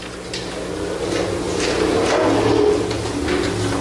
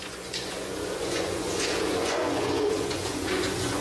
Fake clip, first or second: second